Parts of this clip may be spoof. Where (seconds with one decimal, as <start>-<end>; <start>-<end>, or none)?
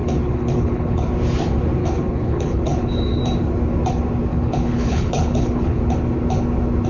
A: 0.0-1.1; 1.8-3.2; 4.3-5.8